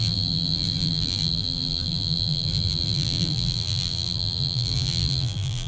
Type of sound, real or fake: fake